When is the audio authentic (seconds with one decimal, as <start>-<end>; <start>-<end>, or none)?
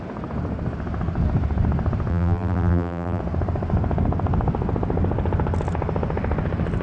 0.0-2.1; 3.2-6.8